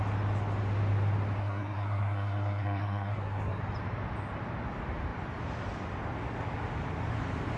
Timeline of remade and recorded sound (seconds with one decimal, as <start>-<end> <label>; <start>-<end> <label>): 0.0-1.4 recorded; 1.4-3.6 remade; 3.6-7.6 recorded